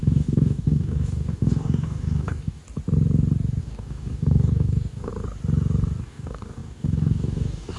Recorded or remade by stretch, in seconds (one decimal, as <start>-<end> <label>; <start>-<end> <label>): 0.0-2.6 remade; 2.6-3.6 recorded; 3.6-5.1 remade; 5.1-6.0 recorded; 6.0-7.8 remade